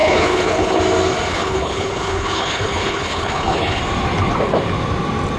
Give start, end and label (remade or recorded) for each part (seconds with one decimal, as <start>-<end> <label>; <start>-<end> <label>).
0.0-0.8 remade; 0.8-1.3 recorded; 1.3-3.8 remade; 3.8-5.4 recorded